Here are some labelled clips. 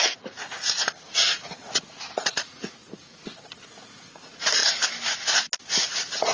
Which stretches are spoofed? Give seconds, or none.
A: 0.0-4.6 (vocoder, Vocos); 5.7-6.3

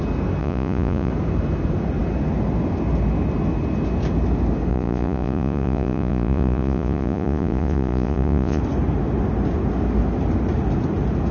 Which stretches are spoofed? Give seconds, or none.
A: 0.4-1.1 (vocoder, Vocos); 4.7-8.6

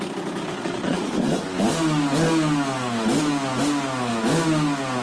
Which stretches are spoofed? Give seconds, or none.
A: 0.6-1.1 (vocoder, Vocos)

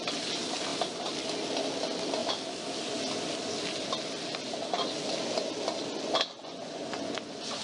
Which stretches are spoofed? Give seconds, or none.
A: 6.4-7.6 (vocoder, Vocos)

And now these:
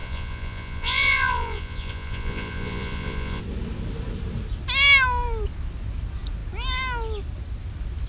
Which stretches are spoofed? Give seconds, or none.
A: 0.0-3.4 (vocoder, Vocos)

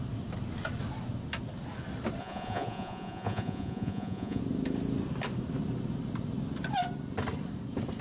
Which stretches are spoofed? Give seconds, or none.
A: 2.2-4.4 (vocoder, Vocos)

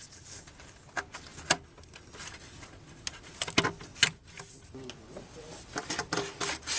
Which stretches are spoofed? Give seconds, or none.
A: none

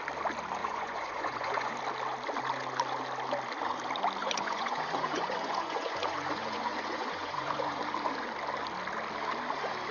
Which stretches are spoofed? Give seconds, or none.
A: 0.6-1.7 (vocoder, Vocos); 4.2-7.8